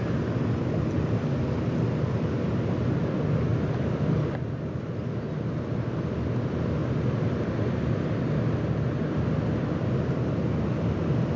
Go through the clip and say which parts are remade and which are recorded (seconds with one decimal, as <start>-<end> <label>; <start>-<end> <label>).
0.0-11.4 recorded